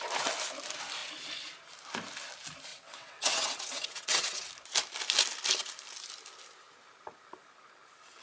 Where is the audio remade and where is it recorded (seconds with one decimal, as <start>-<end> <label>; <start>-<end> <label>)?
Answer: 0.0-2.7 recorded; 2.7-4.5 remade; 4.5-8.2 recorded